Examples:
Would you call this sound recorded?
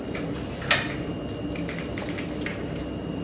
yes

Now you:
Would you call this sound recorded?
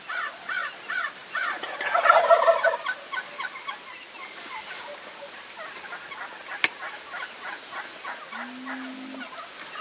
yes